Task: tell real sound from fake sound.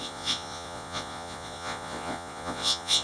fake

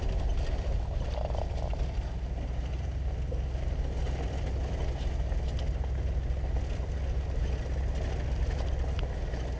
real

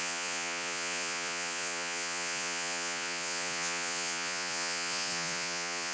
fake